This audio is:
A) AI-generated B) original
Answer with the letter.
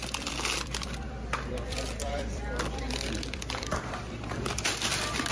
A